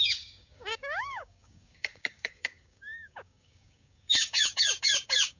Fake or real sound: fake